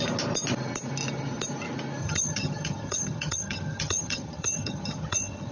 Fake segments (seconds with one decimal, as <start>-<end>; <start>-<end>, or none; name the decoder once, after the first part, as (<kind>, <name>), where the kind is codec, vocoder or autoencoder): 2.0-5.5 (vocoder, HiFi-GAN)